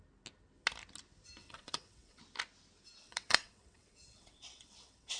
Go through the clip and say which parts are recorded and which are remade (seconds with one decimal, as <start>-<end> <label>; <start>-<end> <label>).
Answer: 0.0-1.4 recorded; 1.4-2.2 remade; 2.2-3.0 recorded; 3.0-5.2 remade

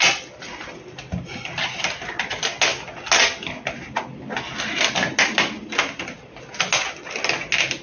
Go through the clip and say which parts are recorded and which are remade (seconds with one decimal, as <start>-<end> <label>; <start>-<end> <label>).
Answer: 0.0-7.8 recorded

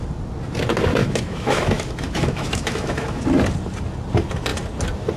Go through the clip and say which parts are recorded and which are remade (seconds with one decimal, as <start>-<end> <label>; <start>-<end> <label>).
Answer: 0.0-1.0 recorded; 1.0-3.2 remade; 3.2-5.2 recorded

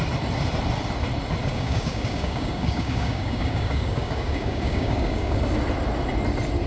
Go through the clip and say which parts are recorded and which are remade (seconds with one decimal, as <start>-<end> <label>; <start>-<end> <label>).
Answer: 0.0-1.4 recorded; 1.4-5.4 remade; 5.4-6.7 recorded

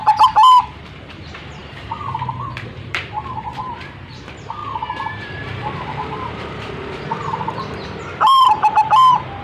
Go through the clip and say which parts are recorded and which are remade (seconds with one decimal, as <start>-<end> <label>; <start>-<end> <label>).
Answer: 0.0-0.6 recorded; 0.6-4.6 remade; 4.6-5.1 recorded; 5.1-9.4 remade

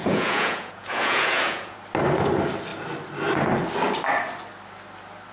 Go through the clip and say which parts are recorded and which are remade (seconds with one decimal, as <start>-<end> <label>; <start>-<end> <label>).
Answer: 0.0-1.8 remade; 1.8-5.3 recorded

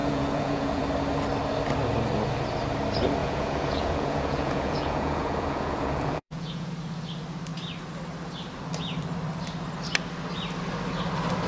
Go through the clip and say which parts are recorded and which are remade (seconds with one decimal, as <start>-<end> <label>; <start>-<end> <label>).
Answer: 0.0-0.8 remade; 0.8-3.2 recorded; 3.2-6.7 remade; 6.7-11.5 recorded